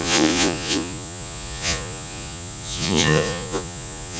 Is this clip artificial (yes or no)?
yes